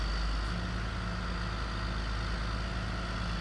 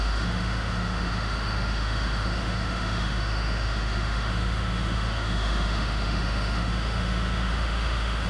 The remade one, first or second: second